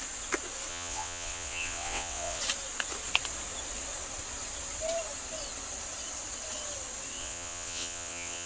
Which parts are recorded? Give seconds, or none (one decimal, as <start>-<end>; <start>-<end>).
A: 0.0-0.7; 2.4-7.2